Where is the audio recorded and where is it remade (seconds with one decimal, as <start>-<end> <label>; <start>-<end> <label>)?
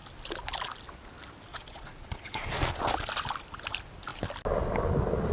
0.0-1.5 recorded; 1.5-2.9 remade; 2.9-5.3 recorded